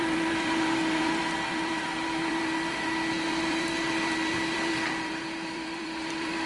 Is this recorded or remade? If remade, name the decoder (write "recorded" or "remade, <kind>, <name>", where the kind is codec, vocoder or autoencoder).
remade, vocoder, BigVGAN v2